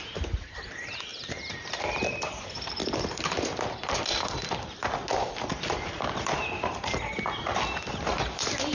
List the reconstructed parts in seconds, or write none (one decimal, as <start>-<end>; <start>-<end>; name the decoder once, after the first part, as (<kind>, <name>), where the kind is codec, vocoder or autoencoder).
0.0-2.8 (vocoder, BigVGAN v2); 7.9-8.7